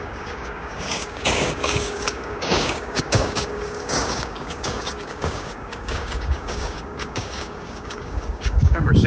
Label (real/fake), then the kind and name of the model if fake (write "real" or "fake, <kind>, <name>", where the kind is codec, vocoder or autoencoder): fake, codec, DAC